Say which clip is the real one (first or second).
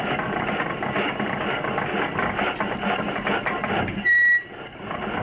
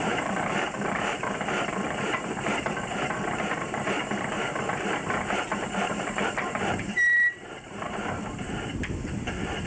first